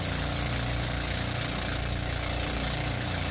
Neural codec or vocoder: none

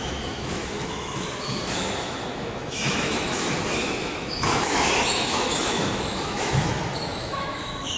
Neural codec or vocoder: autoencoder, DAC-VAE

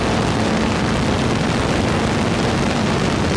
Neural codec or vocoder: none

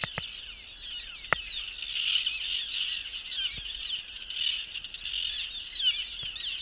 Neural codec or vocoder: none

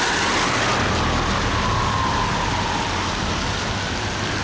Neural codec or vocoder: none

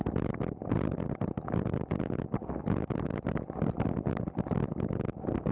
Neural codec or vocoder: none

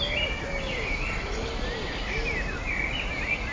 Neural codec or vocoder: none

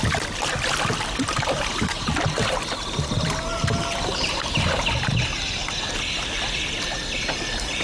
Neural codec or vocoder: none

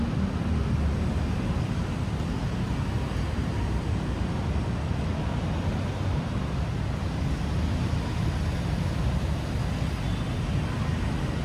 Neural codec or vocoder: none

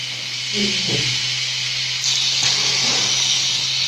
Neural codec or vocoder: none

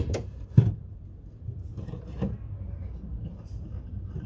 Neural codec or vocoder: none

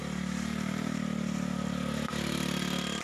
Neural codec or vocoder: none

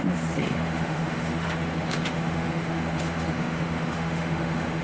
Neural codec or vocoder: autoencoder, DAC-VAE